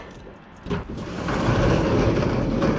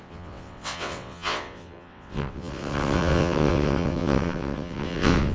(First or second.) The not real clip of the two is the second